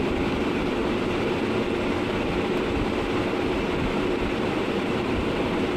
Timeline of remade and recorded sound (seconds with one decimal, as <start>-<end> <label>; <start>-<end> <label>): 0.0-5.8 recorded